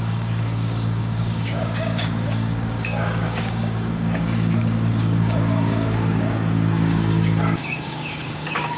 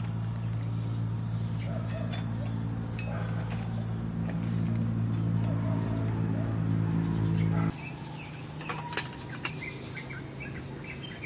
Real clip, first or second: second